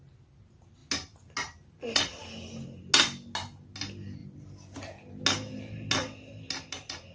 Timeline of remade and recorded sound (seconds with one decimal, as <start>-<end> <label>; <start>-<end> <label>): 0.0-7.1 recorded